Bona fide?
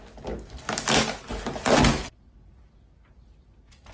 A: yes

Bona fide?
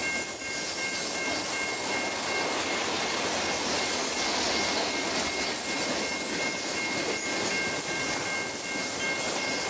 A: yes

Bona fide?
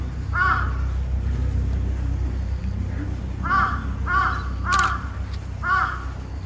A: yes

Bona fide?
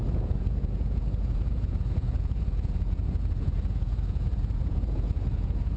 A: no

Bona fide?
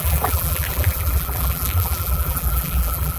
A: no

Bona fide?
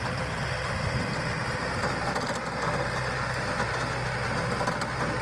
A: yes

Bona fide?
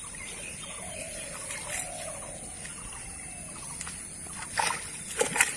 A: yes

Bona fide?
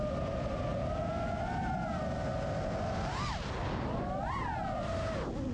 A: yes